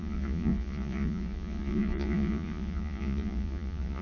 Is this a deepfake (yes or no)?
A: yes